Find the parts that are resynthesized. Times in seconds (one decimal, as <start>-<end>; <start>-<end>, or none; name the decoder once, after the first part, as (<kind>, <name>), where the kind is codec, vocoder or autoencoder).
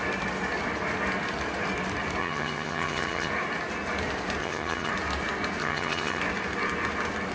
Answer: 2.2-3.3 (vocoder, HiFi-GAN); 4.4-4.9; 5.6-6.2